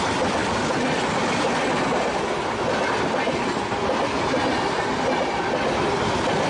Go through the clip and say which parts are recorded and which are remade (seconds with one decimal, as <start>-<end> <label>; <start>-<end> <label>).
0.0-6.5 recorded